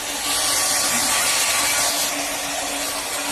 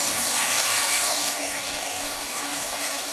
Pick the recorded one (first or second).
first